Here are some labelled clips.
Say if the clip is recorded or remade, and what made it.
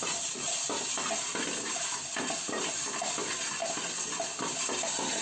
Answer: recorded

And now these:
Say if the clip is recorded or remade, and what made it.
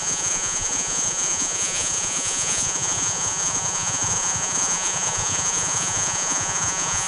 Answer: remade, vocoder, Vocos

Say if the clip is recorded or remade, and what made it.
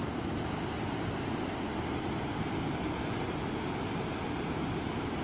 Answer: recorded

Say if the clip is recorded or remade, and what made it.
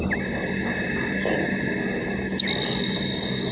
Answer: recorded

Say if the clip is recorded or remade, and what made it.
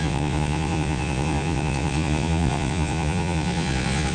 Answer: remade, vocoder, Vocos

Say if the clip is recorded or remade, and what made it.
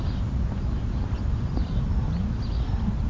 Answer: recorded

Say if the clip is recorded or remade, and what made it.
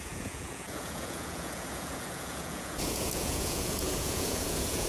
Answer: remade, vocoder, Vocos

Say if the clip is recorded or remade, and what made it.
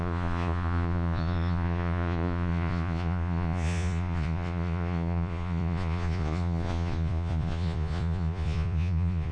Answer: remade, vocoder, Vocos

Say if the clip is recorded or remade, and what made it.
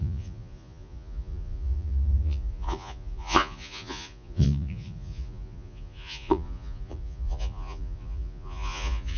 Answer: remade, vocoder, Vocos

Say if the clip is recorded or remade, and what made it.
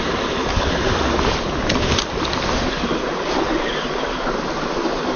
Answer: recorded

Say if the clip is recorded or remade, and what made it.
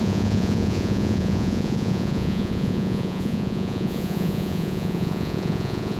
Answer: remade, vocoder, Vocos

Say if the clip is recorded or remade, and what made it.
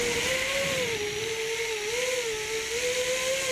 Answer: recorded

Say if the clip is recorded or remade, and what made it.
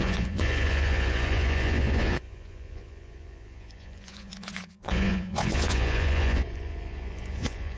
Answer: remade, vocoder, Vocos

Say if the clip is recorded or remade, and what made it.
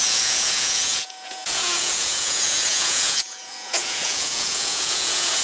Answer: remade, vocoder, Vocos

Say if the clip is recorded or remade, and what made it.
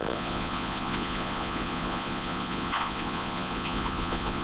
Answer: remade, vocoder, Vocos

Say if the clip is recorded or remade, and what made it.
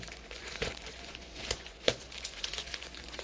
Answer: remade, vocoder, Vocos